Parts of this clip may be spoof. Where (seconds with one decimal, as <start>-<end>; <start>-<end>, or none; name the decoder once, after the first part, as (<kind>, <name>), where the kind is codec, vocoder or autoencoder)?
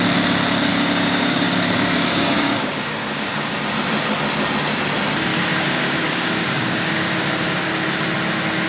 0.7-3.6 (codec, DAC); 5.3-7.7